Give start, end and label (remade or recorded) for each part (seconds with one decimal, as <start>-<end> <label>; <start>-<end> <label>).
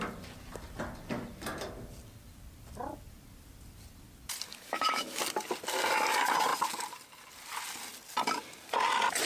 0.0-4.5 recorded; 4.5-5.2 remade; 5.2-9.3 recorded